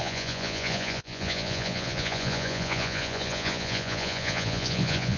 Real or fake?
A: fake